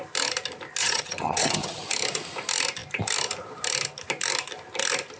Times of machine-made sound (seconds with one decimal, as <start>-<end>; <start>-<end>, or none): 0.8-1.9